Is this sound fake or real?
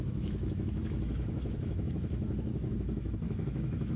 fake